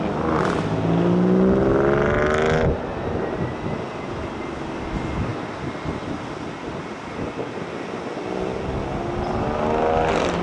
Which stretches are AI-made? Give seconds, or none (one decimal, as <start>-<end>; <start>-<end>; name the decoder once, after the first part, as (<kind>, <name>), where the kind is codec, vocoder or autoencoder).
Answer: none